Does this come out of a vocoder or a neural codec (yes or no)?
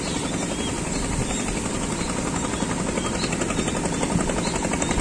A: no